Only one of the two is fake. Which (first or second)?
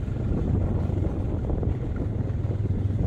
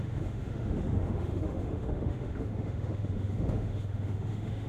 second